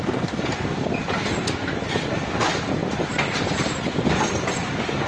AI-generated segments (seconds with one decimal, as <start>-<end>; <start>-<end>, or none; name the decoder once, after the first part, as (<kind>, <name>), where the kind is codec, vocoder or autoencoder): 2.8-5.1 (vocoder, BigVGAN v2)